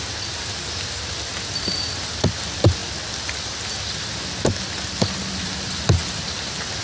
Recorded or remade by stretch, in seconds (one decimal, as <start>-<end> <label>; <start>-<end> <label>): 0.0-6.8 recorded